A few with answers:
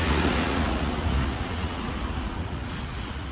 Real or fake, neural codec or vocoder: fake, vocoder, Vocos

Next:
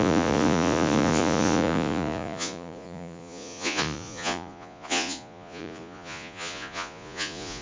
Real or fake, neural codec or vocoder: fake, vocoder, Vocos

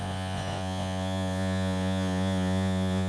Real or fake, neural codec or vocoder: fake, vocoder, Vocos